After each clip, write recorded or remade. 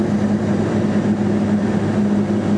recorded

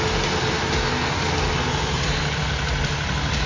recorded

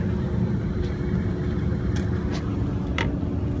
recorded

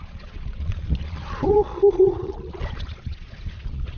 remade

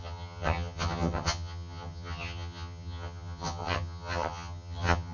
remade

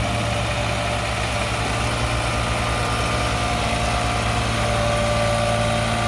recorded